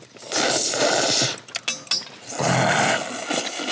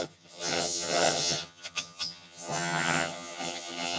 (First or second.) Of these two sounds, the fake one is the second